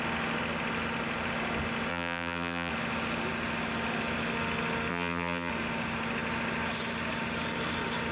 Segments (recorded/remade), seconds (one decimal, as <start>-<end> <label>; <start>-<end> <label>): 0.0-1.9 recorded; 1.9-2.7 remade; 2.7-4.9 recorded; 4.9-5.5 remade; 5.5-8.1 recorded

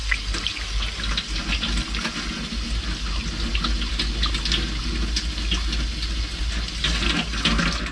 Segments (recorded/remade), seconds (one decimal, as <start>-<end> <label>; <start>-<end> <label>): 0.0-7.9 recorded

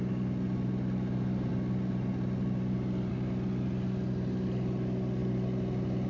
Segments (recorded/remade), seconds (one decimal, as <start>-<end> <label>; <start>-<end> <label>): 0.0-6.1 recorded

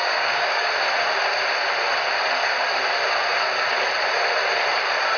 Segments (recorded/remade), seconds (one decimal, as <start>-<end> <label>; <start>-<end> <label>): 0.0-0.7 remade; 0.7-5.2 recorded